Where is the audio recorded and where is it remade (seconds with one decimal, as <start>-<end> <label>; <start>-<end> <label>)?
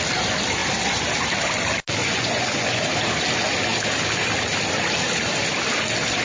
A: 0.0-2.0 recorded; 2.0-2.8 remade; 2.8-6.2 recorded